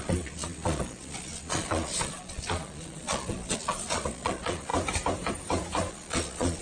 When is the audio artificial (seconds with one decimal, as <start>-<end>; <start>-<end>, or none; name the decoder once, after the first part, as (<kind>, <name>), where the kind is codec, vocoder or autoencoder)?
0.0-4.7 (vocoder, Vocos); 5.9-6.6